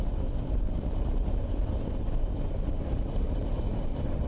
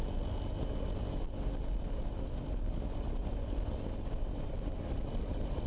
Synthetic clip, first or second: first